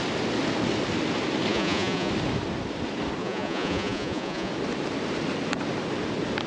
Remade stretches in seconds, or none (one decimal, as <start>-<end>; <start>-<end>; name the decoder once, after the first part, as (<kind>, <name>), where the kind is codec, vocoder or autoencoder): 1.5-2.1 (vocoder, Vocos); 3.2-4.5